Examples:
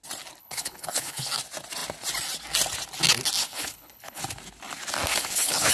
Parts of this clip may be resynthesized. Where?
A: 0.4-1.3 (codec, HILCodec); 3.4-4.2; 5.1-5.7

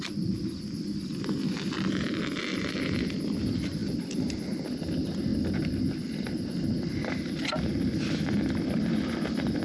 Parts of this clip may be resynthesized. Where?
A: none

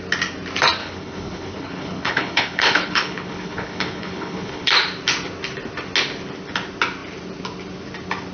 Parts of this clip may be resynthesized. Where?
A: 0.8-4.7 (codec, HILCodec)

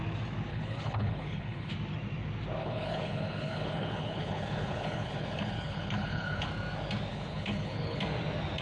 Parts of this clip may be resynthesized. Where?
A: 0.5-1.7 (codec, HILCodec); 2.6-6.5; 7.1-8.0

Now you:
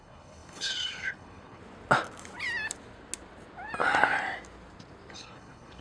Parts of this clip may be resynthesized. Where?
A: 0.0-1.6 (codec, HILCodec); 5.1-5.8

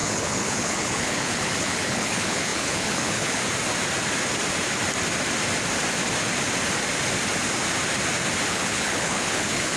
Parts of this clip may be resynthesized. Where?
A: 0.0-3.4 (codec, HILCodec); 8.5-9.8

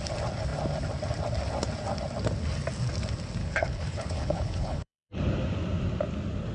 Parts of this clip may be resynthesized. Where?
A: 3.4-5.2 (codec, HILCodec)